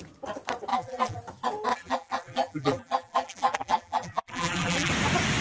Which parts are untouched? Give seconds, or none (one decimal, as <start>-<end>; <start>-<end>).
0.0-0.7; 1.2-1.7; 4.9-5.4